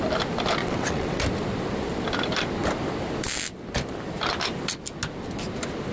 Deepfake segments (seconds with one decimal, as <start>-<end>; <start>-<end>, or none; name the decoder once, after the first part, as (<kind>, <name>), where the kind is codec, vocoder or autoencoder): 0.6-1.2 (vocoder, WaveNeXt)